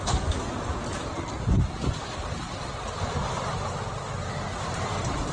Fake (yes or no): no